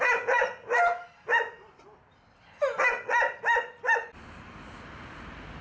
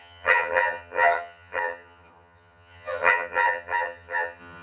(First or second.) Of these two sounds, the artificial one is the second